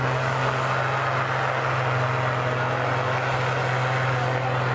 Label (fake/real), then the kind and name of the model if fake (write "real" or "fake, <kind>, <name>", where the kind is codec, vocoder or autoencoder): real